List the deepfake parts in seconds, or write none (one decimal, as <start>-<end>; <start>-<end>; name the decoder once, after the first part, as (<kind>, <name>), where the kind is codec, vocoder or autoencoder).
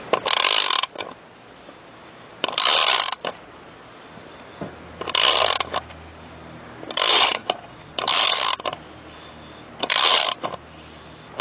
7.1-7.9 (vocoder, Vocos)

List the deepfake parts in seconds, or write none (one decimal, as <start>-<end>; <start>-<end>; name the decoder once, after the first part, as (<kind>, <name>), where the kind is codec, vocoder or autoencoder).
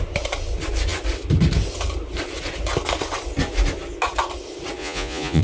4.8-5.4 (vocoder, Vocos)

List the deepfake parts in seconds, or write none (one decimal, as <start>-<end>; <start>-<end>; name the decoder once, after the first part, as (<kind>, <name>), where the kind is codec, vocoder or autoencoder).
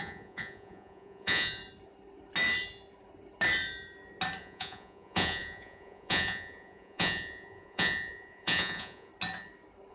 0.0-1.6 (vocoder, Vocos); 4.4-9.1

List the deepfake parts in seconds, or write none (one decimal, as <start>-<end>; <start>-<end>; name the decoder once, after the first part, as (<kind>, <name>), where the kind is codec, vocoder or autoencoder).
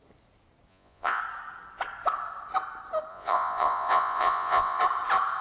0.7-1.2 (vocoder, Vocos); 3.1-4.8